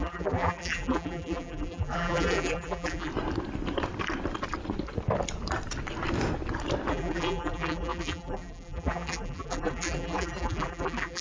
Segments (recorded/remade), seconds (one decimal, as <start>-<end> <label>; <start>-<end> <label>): 0.0-3.1 remade; 3.1-6.9 recorded; 6.9-11.2 remade

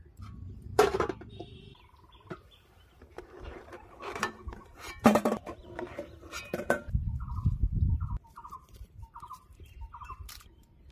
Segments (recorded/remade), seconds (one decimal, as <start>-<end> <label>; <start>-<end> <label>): 0.0-10.9 remade

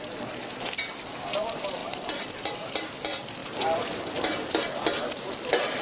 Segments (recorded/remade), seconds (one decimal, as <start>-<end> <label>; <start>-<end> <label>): 0.0-1.8 recorded; 1.8-2.5 remade; 2.5-3.4 recorded; 3.4-4.5 remade; 4.5-5.8 recorded

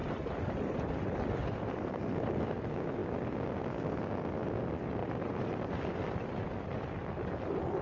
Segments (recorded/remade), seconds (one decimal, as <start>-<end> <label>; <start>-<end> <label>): 0.0-1.4 recorded; 1.4-2.0 remade; 2.0-5.0 recorded; 5.0-5.7 remade; 5.7-7.8 recorded

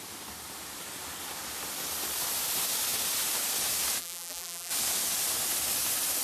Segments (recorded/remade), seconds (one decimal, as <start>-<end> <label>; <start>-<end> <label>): 0.0-4.0 recorded; 4.0-4.7 remade; 4.7-6.2 recorded

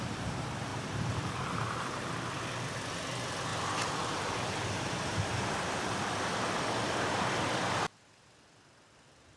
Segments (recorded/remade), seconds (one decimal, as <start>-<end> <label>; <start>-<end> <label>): 0.0-0.7 recorded; 0.7-2.1 remade; 2.1-3.5 recorded; 3.5-7.3 remade; 7.3-9.4 recorded

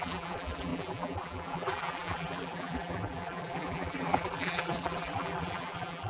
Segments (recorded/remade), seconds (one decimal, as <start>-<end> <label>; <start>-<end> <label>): 0.0-6.1 remade